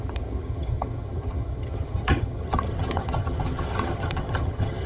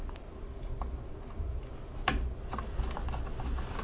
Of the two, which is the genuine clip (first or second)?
second